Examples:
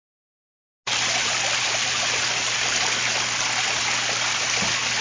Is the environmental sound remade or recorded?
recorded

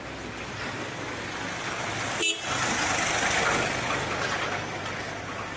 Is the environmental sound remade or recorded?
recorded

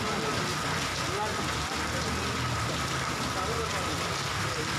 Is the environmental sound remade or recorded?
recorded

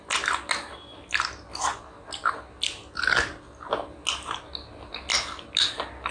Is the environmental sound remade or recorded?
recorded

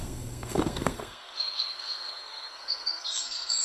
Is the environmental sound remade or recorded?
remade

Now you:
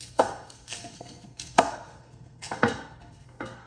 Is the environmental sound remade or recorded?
remade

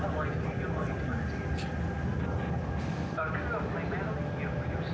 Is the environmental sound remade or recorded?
recorded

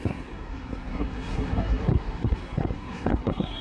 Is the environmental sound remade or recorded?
remade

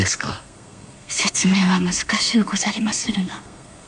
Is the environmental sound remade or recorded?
remade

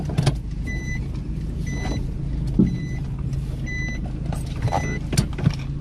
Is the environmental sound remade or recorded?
recorded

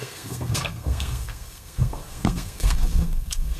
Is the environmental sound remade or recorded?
remade